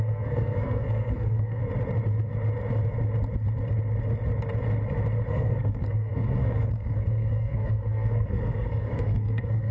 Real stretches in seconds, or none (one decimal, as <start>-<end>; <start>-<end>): 1.6-5.3